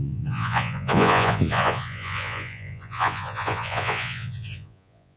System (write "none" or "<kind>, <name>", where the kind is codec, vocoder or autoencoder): vocoder, Vocos